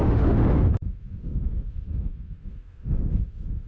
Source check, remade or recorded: remade